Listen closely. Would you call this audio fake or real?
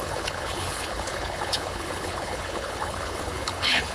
fake